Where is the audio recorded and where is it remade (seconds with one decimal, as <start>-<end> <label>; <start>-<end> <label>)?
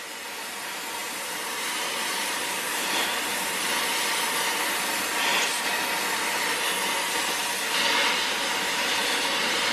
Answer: 0.0-1.0 recorded; 1.0-3.7 remade; 3.7-9.0 recorded; 9.0-9.7 remade